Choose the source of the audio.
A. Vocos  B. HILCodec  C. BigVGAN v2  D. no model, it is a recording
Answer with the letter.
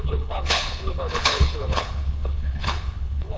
B